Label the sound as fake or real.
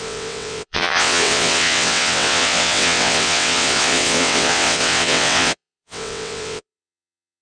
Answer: fake